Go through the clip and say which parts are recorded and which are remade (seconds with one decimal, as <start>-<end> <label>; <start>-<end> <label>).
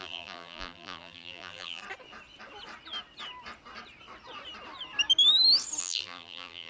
0.0-1.8 remade; 1.8-5.8 recorded; 5.8-6.7 remade